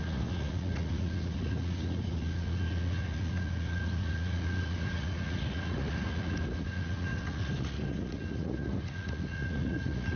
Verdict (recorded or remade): remade